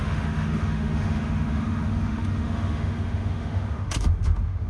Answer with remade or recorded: remade